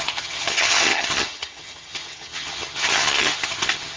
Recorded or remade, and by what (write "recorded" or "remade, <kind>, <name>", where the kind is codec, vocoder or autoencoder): remade, vocoder, HiFi-GAN